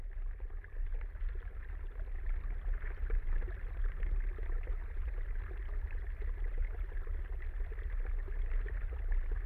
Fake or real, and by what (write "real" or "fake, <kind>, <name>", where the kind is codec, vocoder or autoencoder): real